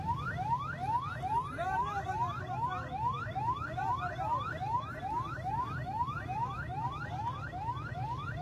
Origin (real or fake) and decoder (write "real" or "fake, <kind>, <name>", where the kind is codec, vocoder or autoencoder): real